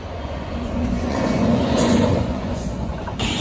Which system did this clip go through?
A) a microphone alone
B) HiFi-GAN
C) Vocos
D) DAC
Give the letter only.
C